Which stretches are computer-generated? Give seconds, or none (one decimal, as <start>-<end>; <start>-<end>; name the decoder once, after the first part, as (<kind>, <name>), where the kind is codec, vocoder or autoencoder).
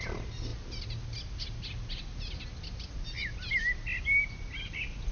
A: none